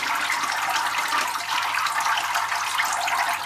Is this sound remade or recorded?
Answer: recorded